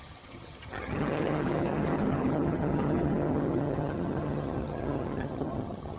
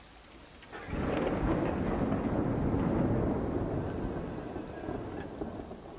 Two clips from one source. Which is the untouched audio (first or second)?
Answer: second